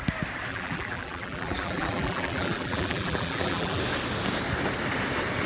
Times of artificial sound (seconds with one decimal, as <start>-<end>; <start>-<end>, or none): 0.5-3.8